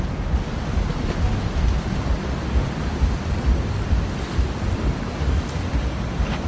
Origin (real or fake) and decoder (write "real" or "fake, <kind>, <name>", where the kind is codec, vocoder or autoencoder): real